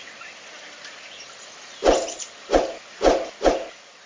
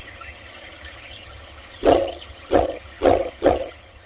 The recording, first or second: first